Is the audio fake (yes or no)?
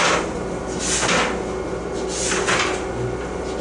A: no